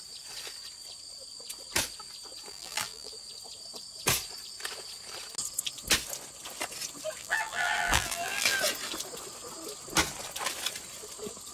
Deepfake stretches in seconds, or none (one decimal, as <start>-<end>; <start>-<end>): 2.5-3.1; 7.2-8.6